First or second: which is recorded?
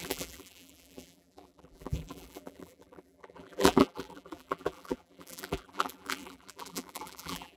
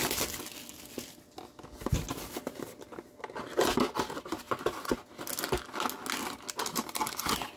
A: second